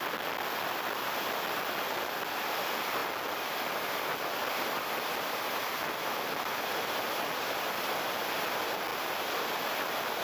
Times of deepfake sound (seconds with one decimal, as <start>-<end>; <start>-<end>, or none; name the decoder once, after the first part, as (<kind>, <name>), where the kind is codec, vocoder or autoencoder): none